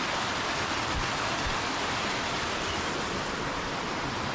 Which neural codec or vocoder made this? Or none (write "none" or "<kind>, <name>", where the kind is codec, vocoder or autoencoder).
none